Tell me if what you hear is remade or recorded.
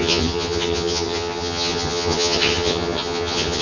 remade